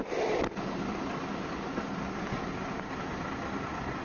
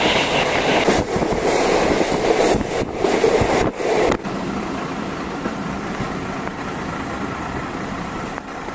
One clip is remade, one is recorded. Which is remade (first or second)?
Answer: second